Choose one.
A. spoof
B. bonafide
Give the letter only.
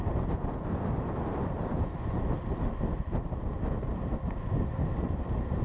B